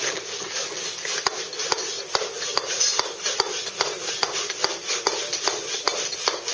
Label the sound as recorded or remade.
recorded